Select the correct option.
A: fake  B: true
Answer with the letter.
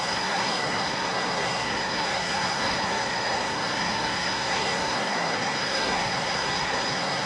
A